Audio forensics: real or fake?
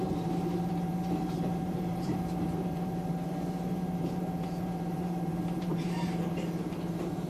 fake